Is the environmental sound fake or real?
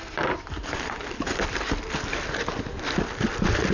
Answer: real